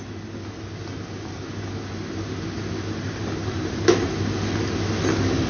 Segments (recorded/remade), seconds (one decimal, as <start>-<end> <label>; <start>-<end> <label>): 0.0-3.4 recorded; 3.4-4.1 remade; 4.1-5.5 recorded